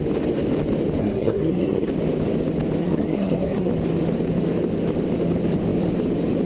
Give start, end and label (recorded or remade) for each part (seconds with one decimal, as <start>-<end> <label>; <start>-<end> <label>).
0.0-1.0 recorded; 1.0-1.9 remade; 1.9-2.8 recorded; 2.8-3.7 remade; 3.7-6.5 recorded